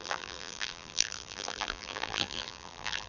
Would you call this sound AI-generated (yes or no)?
yes